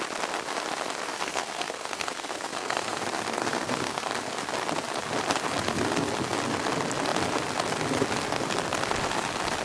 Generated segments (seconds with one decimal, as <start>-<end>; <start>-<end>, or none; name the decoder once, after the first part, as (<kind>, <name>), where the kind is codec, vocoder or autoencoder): 1.2-3.0 (codec, SNAC); 3.4-4.1